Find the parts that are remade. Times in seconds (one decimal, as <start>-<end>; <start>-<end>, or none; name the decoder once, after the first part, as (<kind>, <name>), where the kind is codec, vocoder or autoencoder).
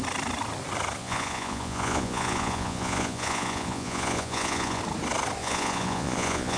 1.0-4.8 (vocoder, Vocos); 5.4-6.6